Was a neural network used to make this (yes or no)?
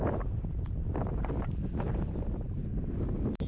no